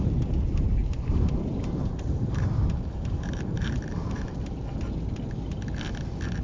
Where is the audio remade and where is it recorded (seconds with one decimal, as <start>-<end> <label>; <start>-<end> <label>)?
0.0-0.8 recorded; 0.8-4.6 remade; 4.6-6.4 recorded